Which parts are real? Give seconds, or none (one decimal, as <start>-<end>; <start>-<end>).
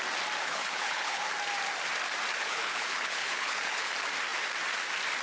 0.0-0.4; 1.3-2.4; 3.9-5.2